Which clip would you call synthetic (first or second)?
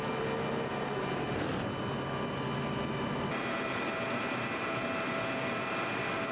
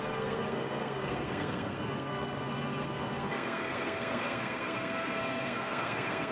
second